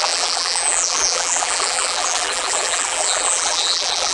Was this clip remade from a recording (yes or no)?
yes